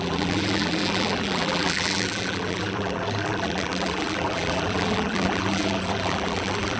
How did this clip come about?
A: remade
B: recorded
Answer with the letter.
A